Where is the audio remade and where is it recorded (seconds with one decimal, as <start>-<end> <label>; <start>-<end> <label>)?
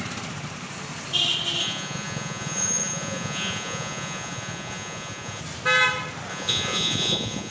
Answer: 0.0-1.6 recorded; 1.6-5.4 remade; 5.4-6.3 recorded; 6.3-7.5 remade